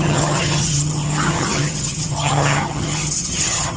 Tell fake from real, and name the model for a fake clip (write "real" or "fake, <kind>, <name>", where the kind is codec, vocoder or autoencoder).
fake, vocoder, HiFi-GAN